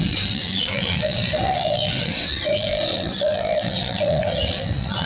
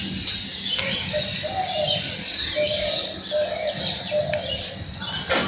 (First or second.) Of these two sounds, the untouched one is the second